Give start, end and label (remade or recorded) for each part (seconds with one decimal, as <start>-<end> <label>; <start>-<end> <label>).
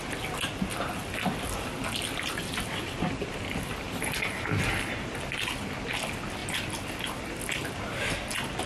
0.0-1.0 recorded; 1.0-4.8 remade; 4.8-8.7 recorded